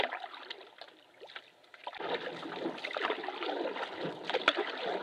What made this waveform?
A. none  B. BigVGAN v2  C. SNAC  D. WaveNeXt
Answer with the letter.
A